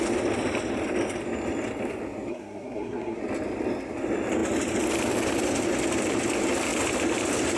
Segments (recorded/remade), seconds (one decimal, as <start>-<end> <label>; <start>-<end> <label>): 0.0-2.3 recorded; 2.3-3.2 remade; 3.2-7.6 recorded